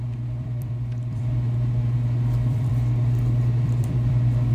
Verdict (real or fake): fake